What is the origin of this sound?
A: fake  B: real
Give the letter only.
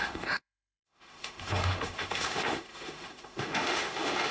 A